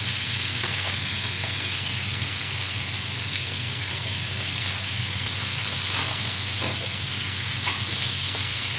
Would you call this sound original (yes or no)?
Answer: no